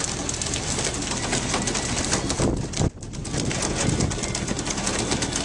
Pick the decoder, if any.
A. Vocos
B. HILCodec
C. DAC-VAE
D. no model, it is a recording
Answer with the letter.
D